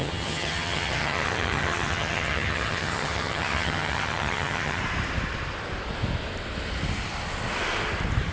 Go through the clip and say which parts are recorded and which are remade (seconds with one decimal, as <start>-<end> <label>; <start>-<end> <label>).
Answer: 0.0-4.8 remade; 4.8-8.3 recorded